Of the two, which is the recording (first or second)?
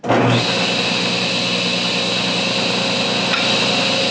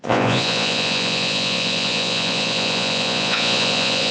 first